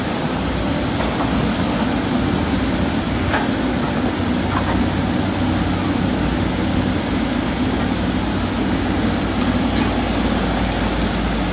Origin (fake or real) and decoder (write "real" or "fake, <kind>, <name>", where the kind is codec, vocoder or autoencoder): real